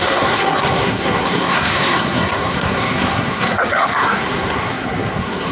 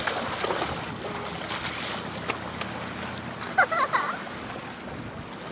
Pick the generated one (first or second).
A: first